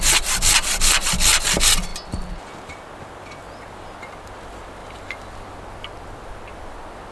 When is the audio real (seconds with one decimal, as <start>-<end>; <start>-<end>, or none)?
0.0-7.1

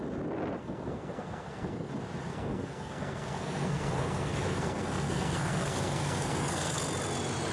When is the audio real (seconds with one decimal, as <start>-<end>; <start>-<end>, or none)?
0.0-0.6; 1.9-2.3; 6.8-7.5

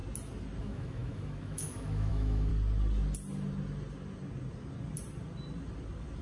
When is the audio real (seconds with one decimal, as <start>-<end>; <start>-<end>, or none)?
0.0-0.6; 2.5-6.2